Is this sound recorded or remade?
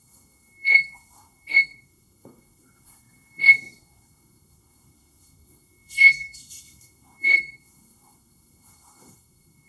remade